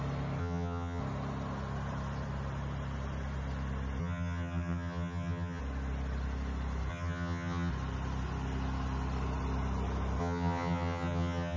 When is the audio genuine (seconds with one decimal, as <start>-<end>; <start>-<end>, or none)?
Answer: 0.0-0.4; 1.0-4.0; 5.6-6.9; 7.7-10.2